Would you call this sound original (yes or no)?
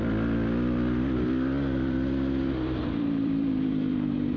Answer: no